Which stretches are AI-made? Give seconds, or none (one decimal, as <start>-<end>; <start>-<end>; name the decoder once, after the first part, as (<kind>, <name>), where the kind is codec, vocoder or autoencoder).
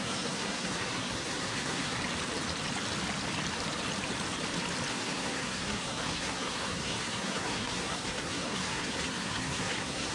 0.0-2.0 (codec, SNAC); 4.9-10.1